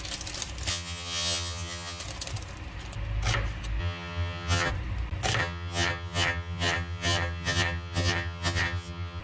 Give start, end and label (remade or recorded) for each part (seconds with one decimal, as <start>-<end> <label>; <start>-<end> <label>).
0.0-0.7 recorded; 0.7-2.0 remade; 2.0-3.8 recorded; 3.8-4.7 remade; 4.7-5.4 recorded; 5.4-9.2 remade